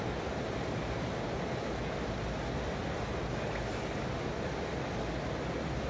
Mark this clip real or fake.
real